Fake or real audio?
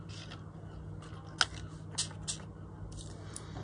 real